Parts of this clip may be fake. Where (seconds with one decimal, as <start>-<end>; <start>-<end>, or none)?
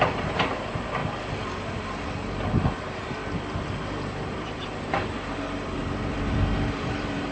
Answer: 0.0-1.0; 3.9-7.3